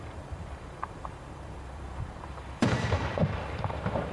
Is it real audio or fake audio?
fake